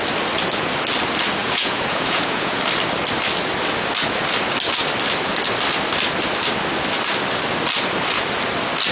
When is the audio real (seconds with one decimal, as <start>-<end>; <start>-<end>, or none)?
0.0-1.4; 2.6-8.9